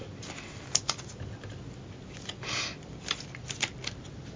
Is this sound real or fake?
real